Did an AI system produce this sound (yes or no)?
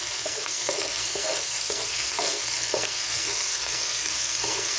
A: yes